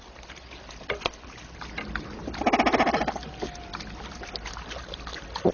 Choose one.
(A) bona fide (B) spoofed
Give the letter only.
A